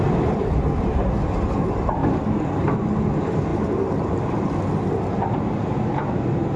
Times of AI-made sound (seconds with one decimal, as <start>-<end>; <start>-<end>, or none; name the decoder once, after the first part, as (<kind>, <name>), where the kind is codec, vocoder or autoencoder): 2.0-2.7 (codec, DAC)